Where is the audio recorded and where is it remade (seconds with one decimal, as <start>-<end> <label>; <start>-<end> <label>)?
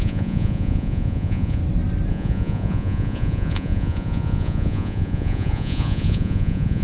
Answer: 0.0-1.6 remade; 1.6-2.1 recorded; 2.1-6.8 remade